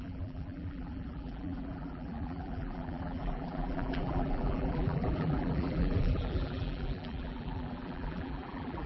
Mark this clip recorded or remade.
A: remade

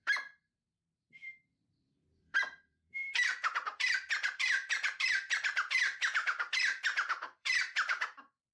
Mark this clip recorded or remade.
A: remade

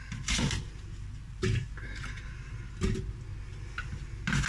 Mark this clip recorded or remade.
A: recorded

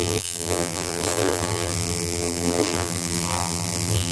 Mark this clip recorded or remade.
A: remade